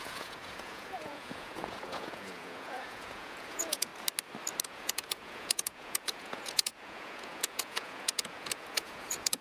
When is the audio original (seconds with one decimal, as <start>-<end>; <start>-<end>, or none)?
3.9-4.6